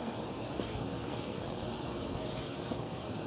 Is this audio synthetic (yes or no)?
yes